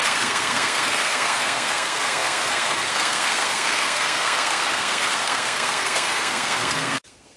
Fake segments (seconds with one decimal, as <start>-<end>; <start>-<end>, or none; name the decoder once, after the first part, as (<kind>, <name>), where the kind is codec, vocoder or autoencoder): 0.0-7.4 (codec, SNAC)